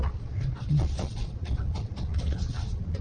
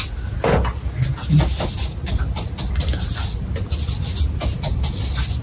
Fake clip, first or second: first